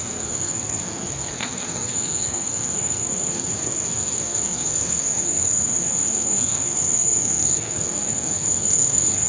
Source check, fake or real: fake